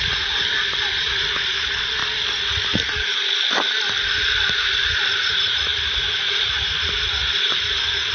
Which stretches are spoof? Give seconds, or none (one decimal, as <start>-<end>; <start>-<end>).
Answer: 0.0-2.0; 4.6-8.1